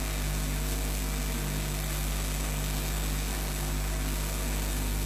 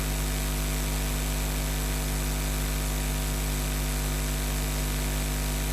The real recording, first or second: second